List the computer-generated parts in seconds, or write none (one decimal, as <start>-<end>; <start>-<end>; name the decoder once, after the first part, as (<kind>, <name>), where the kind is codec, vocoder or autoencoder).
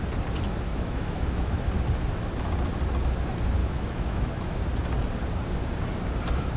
0.7-1.7 (autoencoder, DAC-VAE); 3.6-4.6